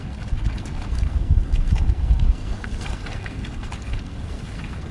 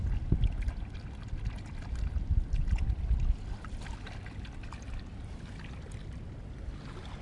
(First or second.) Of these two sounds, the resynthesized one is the first